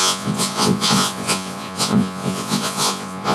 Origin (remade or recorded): remade